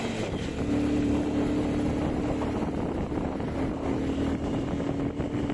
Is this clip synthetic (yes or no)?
no